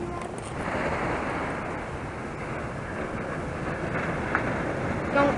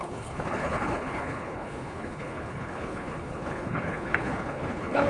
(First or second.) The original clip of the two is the first